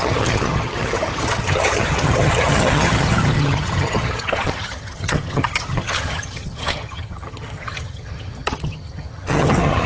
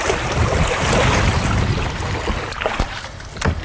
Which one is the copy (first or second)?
first